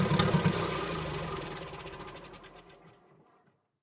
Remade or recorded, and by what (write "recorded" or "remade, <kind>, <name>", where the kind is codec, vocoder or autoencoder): recorded